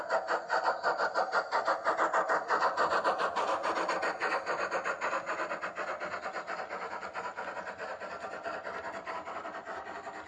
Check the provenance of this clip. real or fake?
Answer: real